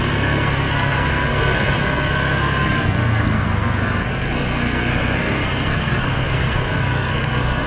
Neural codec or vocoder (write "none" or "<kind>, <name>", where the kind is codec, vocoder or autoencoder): codec, SNAC